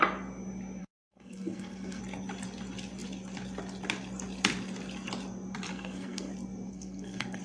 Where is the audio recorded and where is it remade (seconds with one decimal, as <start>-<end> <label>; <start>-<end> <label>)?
0.0-0.8 recorded; 0.8-2.0 remade; 2.0-5.7 recorded; 5.7-6.3 remade; 6.3-6.7 recorded; 6.7-7.4 remade